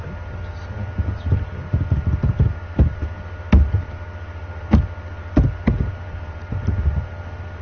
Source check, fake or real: real